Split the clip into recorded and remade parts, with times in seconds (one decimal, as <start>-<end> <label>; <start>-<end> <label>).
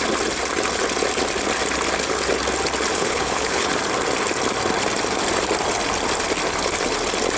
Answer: 0.0-2.9 recorded; 2.9-3.7 remade; 3.7-7.4 recorded